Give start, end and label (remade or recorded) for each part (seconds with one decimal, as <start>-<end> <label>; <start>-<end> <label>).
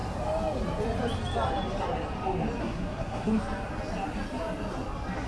0.0-2.6 recorded; 2.6-3.3 remade; 3.3-5.3 recorded